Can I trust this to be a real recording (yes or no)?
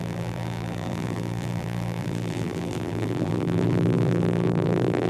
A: no